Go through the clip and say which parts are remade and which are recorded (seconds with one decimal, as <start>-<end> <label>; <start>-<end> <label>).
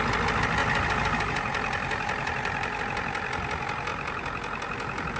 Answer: 0.0-0.6 recorded; 0.6-2.8 remade; 2.8-5.2 recorded